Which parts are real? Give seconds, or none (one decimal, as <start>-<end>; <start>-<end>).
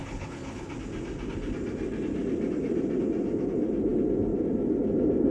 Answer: 0.7-5.3